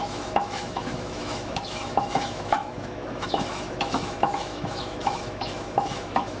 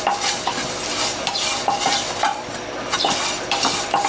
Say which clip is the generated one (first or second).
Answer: first